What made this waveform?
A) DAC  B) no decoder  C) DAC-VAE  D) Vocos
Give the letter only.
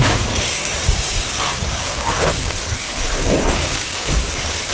A